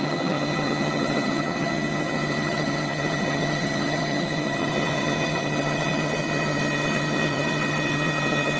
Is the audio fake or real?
fake